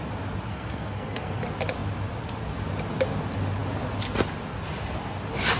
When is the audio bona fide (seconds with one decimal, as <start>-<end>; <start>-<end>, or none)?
0.0-0.5; 1.4-5.6